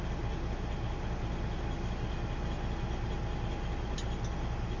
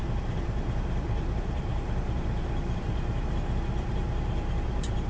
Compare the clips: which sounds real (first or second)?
first